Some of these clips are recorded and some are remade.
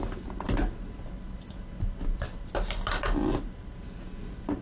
recorded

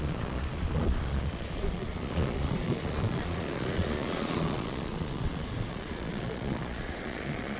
remade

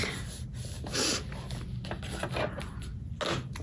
recorded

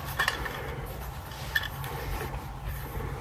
recorded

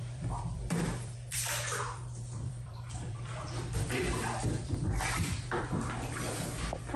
remade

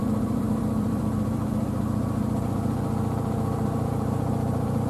remade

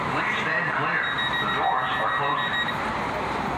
recorded